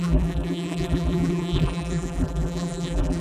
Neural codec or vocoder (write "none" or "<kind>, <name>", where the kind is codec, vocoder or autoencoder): vocoder, BigVGAN v2